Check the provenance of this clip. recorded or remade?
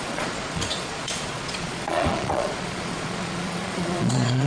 remade